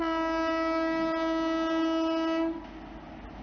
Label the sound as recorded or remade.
recorded